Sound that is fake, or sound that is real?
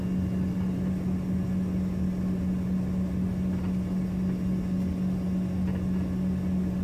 real